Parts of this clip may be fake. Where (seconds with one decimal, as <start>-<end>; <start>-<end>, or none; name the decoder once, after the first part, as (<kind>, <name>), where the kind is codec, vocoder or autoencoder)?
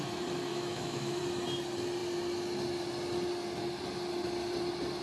0.5-1.2 (autoencoder, DAC-VAE)